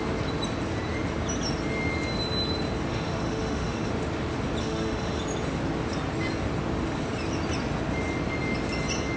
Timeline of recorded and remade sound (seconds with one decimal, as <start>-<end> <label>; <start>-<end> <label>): 0.0-2.9 recorded; 2.9-3.9 remade; 3.9-4.6 recorded; 4.6-5.2 remade; 5.2-9.2 recorded